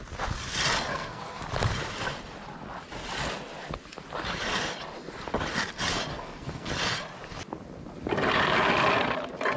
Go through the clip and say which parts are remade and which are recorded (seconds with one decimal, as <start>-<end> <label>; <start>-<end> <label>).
0.0-0.9 recorded; 0.9-1.4 remade; 1.4-6.1 recorded; 6.1-6.7 remade; 6.7-9.6 recorded